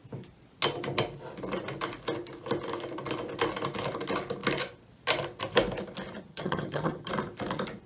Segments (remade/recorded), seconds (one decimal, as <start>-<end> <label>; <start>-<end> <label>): 0.0-6.3 recorded; 6.3-7.1 remade; 7.1-7.9 recorded